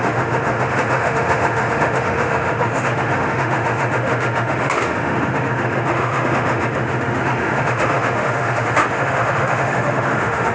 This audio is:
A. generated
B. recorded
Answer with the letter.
A